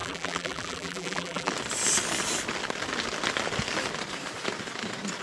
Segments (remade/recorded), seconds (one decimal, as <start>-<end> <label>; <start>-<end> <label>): 0.0-1.5 remade; 1.5-5.2 recorded